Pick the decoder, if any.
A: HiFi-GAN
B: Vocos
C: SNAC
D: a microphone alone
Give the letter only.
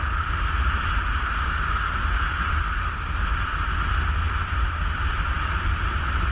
D